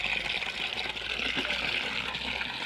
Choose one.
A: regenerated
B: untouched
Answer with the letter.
B